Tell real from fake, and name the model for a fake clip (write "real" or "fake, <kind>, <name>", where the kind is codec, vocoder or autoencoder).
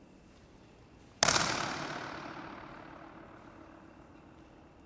real